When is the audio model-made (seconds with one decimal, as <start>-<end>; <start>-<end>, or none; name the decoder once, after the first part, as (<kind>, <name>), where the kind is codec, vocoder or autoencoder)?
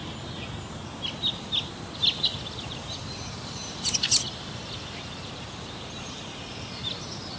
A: none